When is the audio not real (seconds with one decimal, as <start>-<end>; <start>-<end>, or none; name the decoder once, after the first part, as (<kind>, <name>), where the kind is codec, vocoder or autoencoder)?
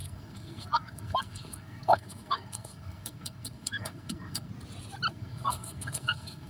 0.0-4.5 (codec, SNAC); 5.1-6.5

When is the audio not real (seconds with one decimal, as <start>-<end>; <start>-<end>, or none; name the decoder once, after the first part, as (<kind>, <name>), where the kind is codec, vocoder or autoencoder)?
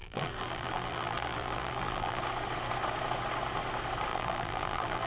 0.0-2.2 (vocoder, BigVGAN v2); 4.1-5.1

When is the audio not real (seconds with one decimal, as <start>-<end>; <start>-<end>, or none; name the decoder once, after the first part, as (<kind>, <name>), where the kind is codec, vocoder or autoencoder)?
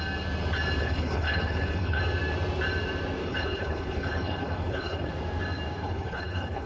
0.8-2.0 (codec, HILCodec); 3.2-5.1; 5.8-6.7